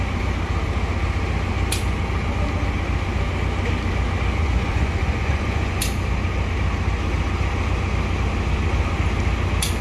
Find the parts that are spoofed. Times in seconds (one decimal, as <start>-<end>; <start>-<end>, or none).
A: 4.4-5.8